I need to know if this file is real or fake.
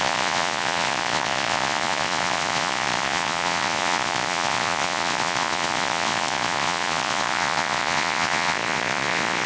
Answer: fake